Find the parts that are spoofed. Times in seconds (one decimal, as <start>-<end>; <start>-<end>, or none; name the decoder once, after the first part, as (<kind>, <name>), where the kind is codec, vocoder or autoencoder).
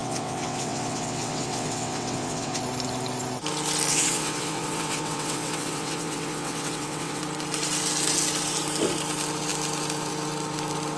0.0-2.6 (vocoder, WaveNeXt); 3.9-7.2